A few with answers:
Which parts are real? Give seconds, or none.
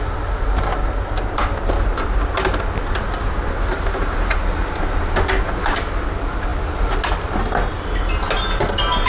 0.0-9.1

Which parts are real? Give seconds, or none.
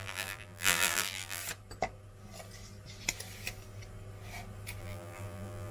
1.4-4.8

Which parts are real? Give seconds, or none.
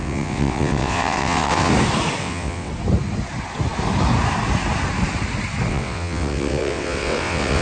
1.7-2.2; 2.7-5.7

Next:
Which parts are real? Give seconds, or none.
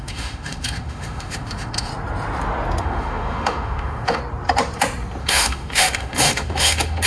1.9-2.8; 4.2-5.2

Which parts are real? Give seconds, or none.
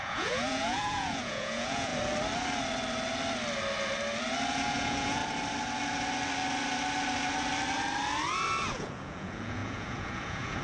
1.9-4.5; 5.2-8.6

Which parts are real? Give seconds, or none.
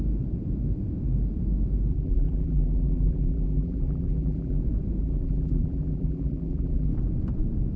0.0-1.9; 4.6-5.0; 6.9-7.8